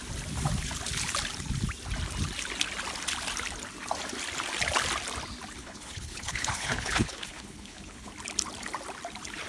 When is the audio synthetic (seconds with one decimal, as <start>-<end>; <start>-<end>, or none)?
5.6-8.1